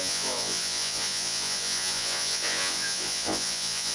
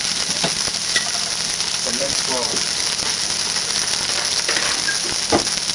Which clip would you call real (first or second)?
second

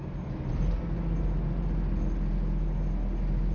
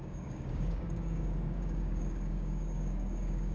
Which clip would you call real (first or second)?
first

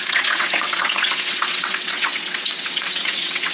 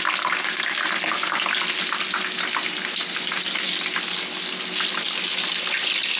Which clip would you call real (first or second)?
second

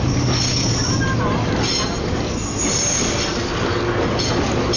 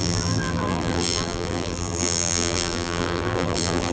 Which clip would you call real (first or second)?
first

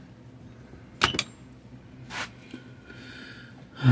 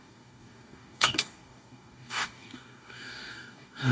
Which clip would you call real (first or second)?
first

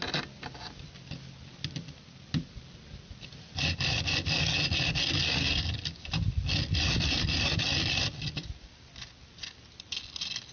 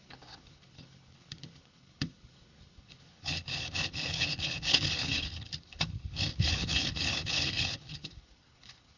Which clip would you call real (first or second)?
first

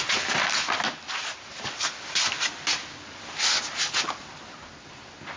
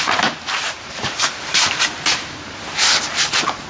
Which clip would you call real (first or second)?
first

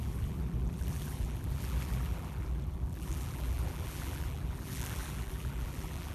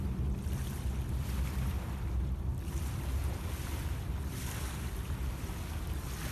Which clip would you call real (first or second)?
second